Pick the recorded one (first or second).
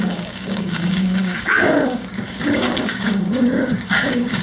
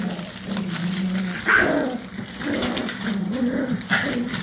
second